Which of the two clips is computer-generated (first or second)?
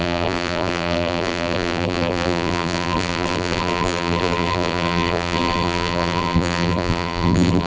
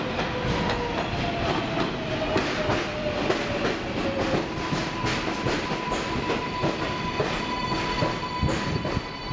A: first